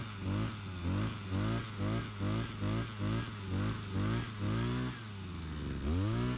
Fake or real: real